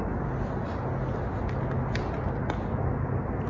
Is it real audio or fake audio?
real